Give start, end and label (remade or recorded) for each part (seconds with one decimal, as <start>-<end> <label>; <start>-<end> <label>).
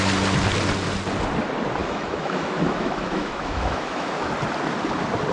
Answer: 0.0-1.8 recorded; 1.8-4.3 remade; 4.3-5.3 recorded